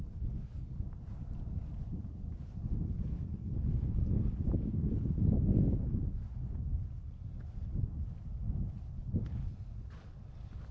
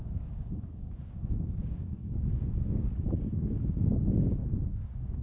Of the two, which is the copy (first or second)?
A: second